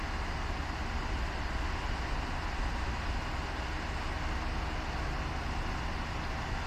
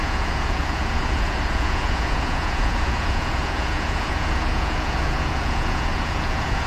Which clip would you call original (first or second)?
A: first